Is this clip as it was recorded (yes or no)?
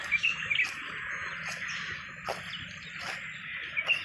yes